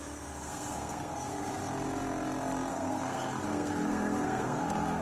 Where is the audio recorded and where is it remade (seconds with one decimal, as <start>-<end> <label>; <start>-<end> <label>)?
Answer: 0.0-1.6 remade; 1.6-2.7 recorded; 2.7-5.0 remade